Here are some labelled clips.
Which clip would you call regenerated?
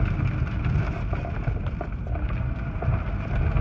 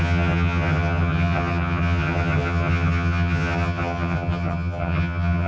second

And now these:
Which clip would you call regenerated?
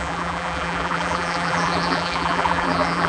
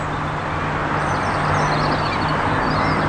first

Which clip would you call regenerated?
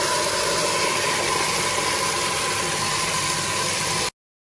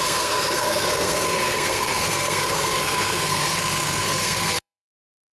second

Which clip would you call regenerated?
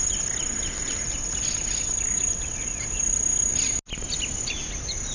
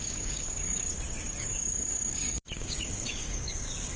second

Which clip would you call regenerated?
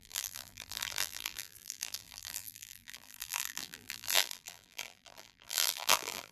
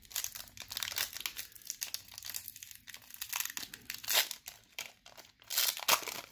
first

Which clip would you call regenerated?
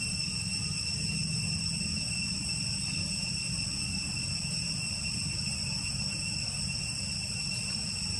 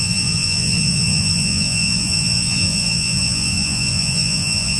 second